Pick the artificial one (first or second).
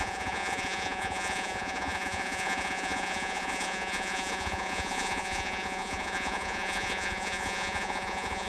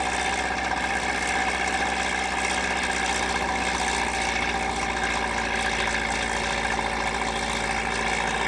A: first